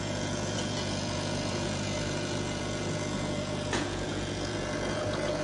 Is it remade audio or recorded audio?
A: remade